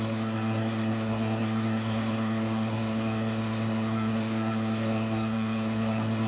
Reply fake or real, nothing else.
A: fake